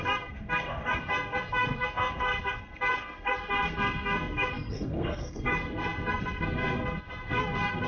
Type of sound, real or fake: fake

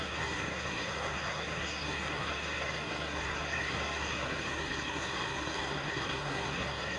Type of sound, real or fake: fake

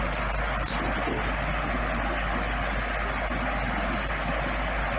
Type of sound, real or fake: real